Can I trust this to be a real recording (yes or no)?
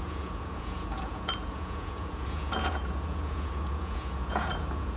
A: no